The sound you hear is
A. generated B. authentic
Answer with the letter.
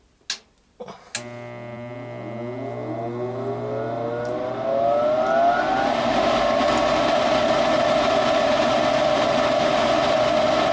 B